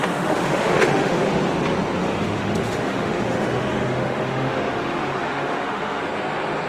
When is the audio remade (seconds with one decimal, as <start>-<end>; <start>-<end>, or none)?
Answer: 0.0-1.3; 2.0-6.0